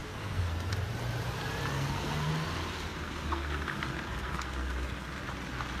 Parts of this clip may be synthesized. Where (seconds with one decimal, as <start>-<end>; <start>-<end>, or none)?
0.0-0.7; 1.7-2.3; 2.9-5.2